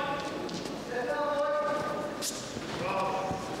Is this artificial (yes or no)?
no